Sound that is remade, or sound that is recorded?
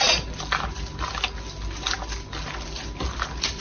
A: recorded